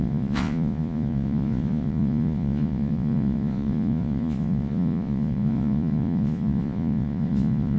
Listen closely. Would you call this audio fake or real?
fake